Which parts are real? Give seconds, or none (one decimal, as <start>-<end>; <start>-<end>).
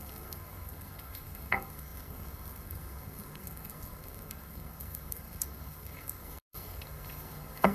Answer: none